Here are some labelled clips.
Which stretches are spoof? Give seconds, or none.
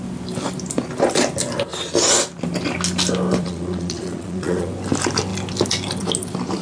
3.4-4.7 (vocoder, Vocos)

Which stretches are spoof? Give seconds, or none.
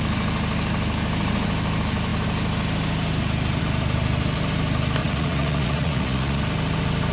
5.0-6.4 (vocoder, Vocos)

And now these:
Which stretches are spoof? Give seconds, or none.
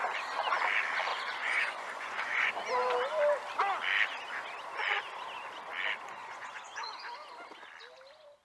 1.1-2.5 (vocoder, Vocos); 6.2-7.3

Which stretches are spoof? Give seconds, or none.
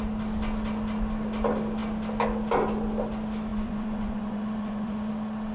3.5-5.1 (vocoder, Vocos)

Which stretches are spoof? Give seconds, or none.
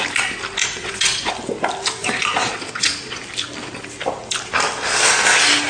0.6-1.3 (vocoder, Vocos); 2.0-3.2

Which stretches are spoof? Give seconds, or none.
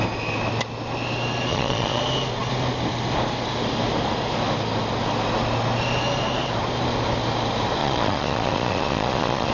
1.5-2.0 (vocoder, Vocos); 7.8-9.5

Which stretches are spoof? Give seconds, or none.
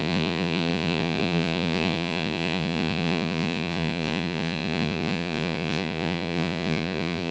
0.0-7.3 (vocoder, Vocos)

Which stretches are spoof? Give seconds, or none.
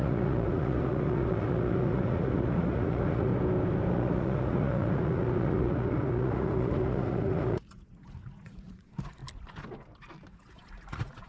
0.0-3.3 (vocoder, Vocos); 3.9-9.2; 10.3-11.3